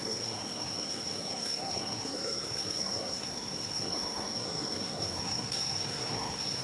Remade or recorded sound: remade